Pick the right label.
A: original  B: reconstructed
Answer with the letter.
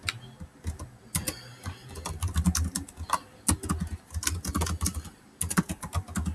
A